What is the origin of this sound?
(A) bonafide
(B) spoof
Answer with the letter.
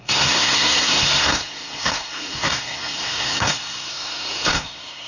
B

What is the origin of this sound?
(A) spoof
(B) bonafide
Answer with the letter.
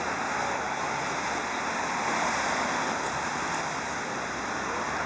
B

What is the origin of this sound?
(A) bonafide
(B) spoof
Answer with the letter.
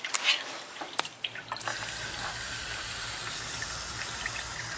A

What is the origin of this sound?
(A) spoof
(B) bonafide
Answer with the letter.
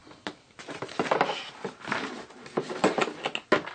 B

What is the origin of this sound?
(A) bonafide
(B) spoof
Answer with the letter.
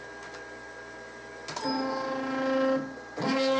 A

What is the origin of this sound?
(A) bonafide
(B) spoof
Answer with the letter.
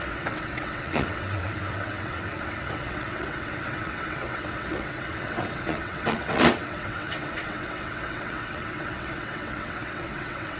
B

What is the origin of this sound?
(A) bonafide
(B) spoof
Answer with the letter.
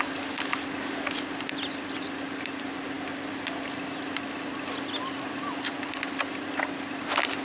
A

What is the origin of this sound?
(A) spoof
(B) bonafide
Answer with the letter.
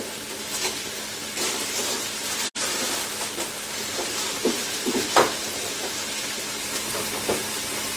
B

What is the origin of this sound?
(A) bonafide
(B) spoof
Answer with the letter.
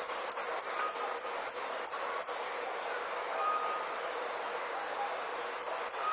A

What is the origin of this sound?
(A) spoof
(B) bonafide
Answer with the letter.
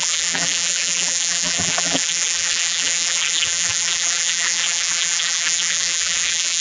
A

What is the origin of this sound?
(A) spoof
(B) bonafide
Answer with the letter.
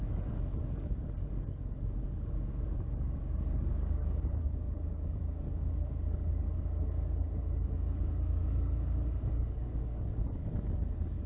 A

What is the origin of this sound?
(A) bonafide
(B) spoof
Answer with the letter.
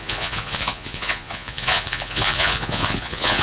B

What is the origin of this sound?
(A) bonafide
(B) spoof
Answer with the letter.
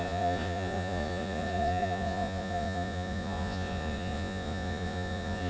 B